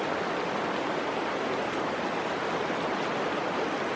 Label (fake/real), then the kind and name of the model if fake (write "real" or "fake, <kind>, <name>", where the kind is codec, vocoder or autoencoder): real